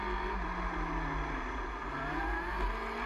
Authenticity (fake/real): real